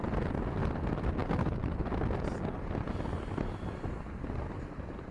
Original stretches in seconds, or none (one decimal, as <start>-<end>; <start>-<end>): 0.0-5.1